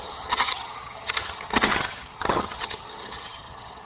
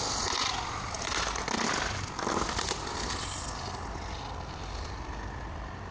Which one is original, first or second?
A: second